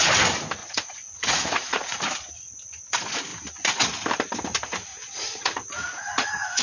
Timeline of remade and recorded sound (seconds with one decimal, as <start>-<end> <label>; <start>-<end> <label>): 0.0-0.6 recorded; 0.6-2.1 remade; 2.1-4.9 recorded; 4.9-6.6 remade